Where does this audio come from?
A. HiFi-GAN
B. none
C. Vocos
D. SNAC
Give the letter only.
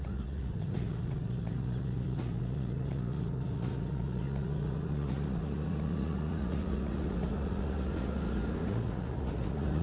C